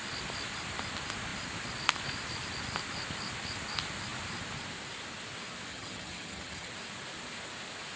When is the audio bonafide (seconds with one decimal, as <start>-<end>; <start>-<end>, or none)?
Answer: 0.0-5.7; 6.7-8.0